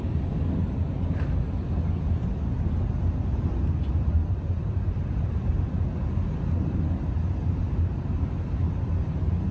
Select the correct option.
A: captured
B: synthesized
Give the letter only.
A